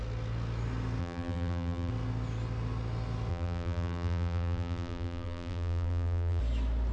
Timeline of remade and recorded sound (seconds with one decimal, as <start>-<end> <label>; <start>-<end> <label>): 0.0-1.0 recorded; 1.0-1.9 remade; 1.9-3.3 recorded; 3.3-6.4 remade; 6.4-6.9 recorded